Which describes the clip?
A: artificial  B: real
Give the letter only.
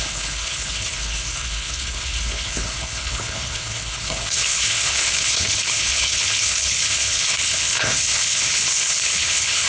A